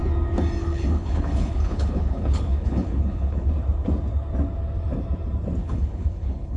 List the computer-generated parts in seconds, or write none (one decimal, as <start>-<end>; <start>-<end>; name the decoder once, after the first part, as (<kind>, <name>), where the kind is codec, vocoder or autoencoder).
0.6-3.5 (codec, HILCodec); 5.6-6.6